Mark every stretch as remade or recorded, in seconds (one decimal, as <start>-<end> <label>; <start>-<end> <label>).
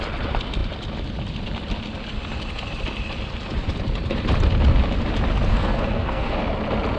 0.0-5.5 recorded; 5.5-6.4 remade; 6.4-7.0 recorded